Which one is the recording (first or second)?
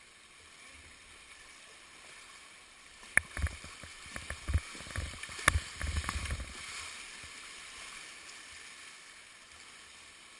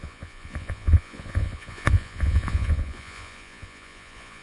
first